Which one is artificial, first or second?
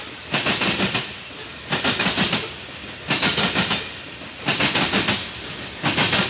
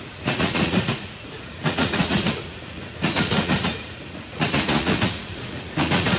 second